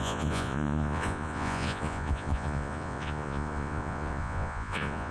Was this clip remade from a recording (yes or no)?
yes